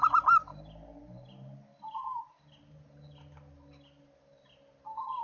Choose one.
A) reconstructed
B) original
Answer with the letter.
B